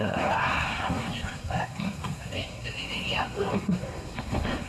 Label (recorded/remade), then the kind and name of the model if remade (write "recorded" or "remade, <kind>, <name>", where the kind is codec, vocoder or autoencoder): remade, codec, SNAC